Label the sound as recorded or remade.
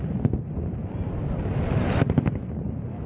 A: recorded